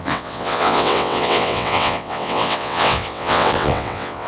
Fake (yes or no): yes